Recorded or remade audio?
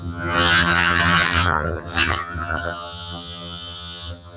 remade